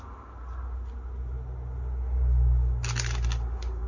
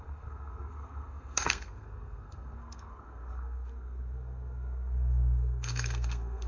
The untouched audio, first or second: first